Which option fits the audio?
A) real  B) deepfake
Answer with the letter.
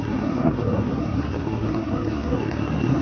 B